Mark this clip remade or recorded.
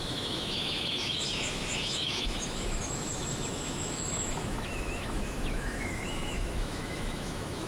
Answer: remade